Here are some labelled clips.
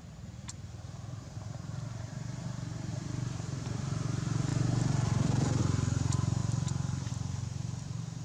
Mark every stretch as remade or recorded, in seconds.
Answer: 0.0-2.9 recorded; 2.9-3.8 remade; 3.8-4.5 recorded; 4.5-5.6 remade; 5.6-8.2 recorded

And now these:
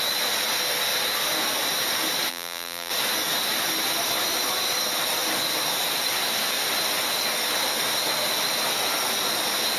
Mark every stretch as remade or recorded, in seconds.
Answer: 0.0-2.3 recorded; 2.3-2.9 remade; 2.9-9.8 recorded

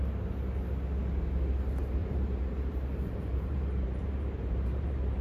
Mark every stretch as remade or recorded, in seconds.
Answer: 0.0-2.0 recorded; 2.0-5.2 remade